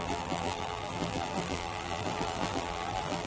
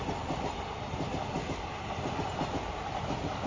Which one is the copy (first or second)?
first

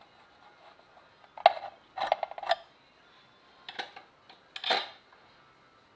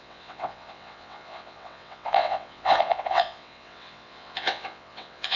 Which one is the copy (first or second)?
second